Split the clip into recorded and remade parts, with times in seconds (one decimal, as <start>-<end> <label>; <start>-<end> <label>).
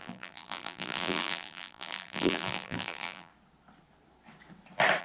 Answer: 0.0-3.3 remade; 3.3-5.0 recorded